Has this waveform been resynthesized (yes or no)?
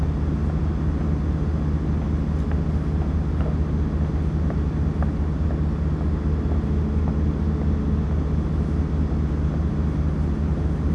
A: no